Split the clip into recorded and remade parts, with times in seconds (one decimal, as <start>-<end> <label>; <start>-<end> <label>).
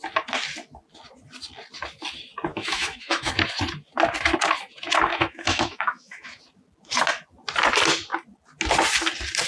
0.0-2.5 recorded; 2.5-3.3 remade; 3.3-5.1 recorded; 5.1-6.4 remade; 6.4-9.5 recorded